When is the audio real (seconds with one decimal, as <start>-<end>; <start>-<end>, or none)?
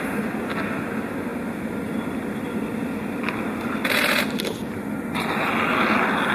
0.0-6.3